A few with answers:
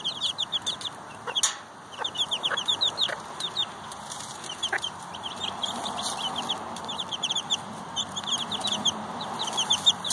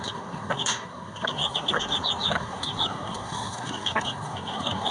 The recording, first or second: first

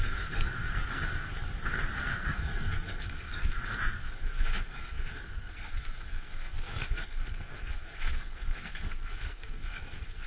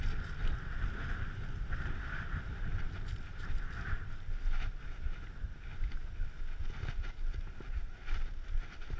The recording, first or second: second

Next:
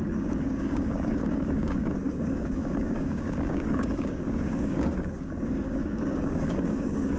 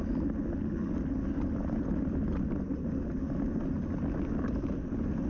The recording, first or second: second